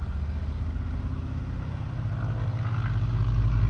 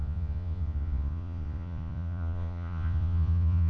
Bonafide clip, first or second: first